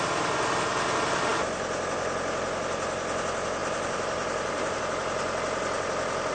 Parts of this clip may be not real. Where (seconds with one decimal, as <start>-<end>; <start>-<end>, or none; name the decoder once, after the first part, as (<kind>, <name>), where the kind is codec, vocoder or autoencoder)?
3.6-4.8 (vocoder, BigVGAN v2)